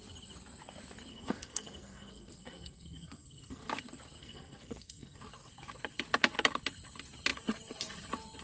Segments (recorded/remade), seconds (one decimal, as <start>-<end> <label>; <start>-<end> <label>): 0.0-1.1 recorded; 1.1-3.7 remade; 3.7-4.2 recorded; 4.2-5.2 remade; 5.2-8.4 recorded